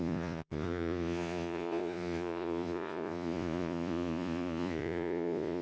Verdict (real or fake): fake